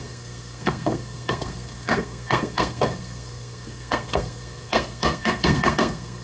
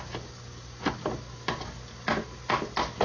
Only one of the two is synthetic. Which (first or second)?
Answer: first